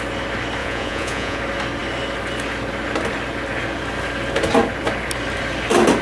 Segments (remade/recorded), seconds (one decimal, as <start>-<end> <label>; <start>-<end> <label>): 0.0-0.6 recorded; 0.6-1.4 remade; 1.4-6.0 recorded